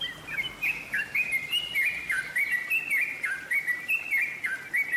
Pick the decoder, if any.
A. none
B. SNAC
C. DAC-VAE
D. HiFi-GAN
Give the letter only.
A